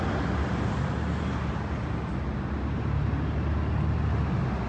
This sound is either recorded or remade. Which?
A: recorded